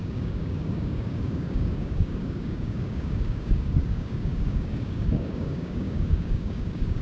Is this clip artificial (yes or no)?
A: yes